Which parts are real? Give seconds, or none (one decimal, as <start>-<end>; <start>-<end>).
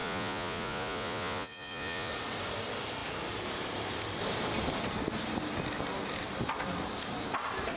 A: 2.1-7.8